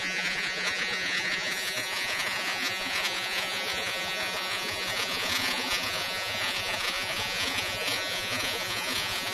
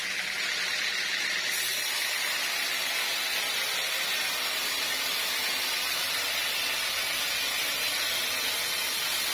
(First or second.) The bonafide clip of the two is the second